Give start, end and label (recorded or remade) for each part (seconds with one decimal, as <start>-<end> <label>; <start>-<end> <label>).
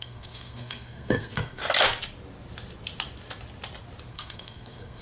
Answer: 0.0-1.6 remade; 1.6-4.1 recorded; 4.1-5.0 remade